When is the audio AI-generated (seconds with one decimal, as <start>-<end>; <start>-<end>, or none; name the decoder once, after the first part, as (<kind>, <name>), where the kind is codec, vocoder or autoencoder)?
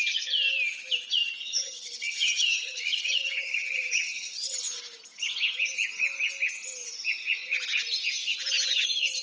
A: 1.4-4.8 (vocoder, HiFi-GAN)